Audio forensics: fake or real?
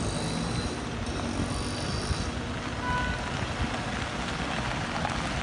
real